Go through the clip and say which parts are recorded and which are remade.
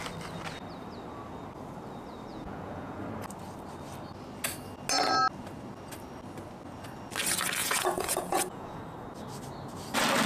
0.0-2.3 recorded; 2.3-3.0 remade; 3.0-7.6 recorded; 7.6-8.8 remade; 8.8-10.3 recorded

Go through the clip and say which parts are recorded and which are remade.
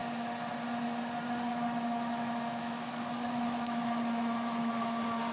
0.0-1.5 recorded; 1.5-4.7 remade; 4.7-5.3 recorded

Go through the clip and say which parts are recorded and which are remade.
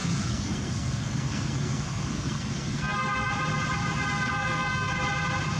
0.0-3.3 remade; 3.3-4.1 recorded; 4.1-4.9 remade; 4.9-5.6 recorded